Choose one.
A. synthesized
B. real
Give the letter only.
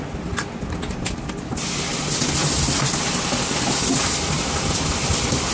B